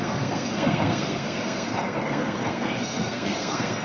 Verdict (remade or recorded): remade